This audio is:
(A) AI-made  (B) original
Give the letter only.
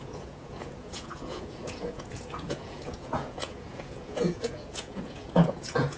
A